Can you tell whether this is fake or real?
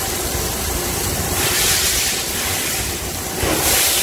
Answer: real